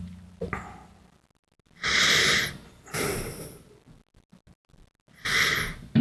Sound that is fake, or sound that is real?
real